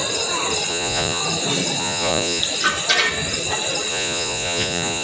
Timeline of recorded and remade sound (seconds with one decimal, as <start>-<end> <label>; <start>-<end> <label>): 0.0-0.7 recorded; 0.7-1.2 remade; 1.2-1.8 recorded; 1.8-2.4 remade; 2.4-3.9 recorded; 3.9-5.0 remade